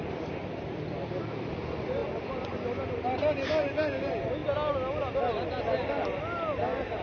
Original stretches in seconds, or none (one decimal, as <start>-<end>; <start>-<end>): 0.0-7.0